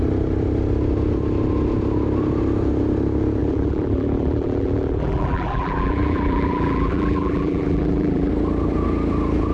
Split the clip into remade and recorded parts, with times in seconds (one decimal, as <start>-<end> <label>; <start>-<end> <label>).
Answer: 0.0-3.4 recorded; 3.4-8.3 remade; 8.3-9.5 recorded